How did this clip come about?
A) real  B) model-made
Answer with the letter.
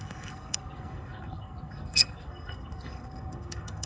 B